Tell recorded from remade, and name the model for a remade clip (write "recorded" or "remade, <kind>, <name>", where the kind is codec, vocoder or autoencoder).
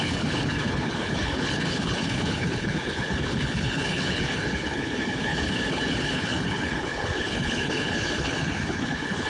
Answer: remade, codec, HILCodec